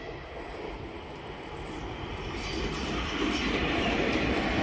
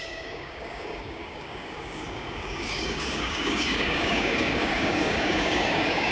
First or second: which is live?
first